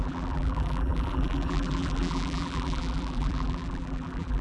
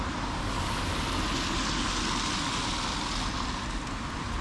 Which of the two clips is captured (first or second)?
second